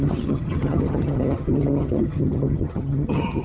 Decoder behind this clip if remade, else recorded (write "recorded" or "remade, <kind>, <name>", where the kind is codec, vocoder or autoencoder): remade, vocoder, HiFi-GAN